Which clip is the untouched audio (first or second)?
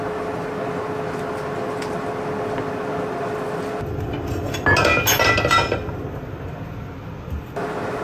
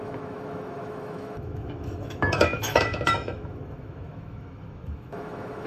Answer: first